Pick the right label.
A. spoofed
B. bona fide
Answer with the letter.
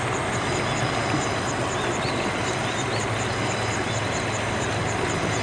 B